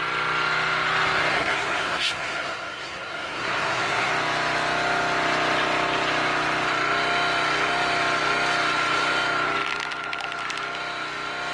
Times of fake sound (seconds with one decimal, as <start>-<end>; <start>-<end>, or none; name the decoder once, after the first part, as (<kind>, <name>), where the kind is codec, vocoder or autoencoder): 1.3-4.1 (codec, SNAC)